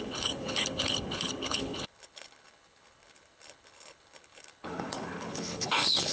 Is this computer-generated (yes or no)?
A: yes